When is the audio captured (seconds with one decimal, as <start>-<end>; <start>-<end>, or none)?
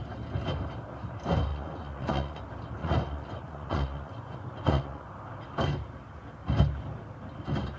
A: 0.0-1.5; 2.4-2.8; 5.1-7.8